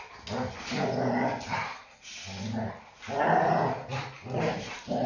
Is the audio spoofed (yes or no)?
no